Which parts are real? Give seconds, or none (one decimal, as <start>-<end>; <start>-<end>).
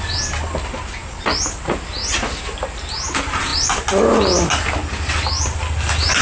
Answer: 0.0-6.2